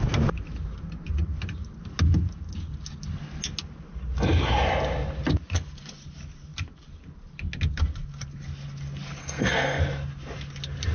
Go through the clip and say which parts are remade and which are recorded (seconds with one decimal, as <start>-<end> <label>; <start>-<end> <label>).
0.0-9.2 recorded; 9.2-9.8 remade; 9.8-10.9 recorded